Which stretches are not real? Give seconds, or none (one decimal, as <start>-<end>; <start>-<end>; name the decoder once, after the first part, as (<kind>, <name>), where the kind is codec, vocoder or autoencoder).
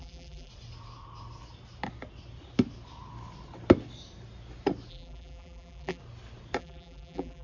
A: 0.0-0.5 (vocoder, BigVGAN v2); 4.9-6.0; 6.6-7.4